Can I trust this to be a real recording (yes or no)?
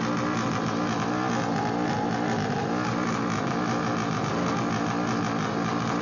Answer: yes